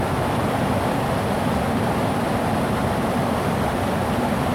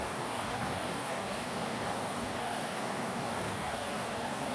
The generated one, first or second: second